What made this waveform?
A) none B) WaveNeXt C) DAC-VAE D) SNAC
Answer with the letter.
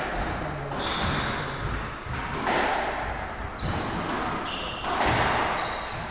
A